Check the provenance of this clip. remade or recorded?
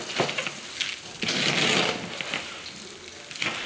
recorded